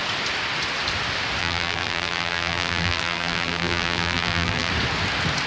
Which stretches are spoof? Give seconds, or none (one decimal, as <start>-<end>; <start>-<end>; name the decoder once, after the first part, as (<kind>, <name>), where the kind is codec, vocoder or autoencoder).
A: 1.4-4.7 (vocoder, BigVGAN v2)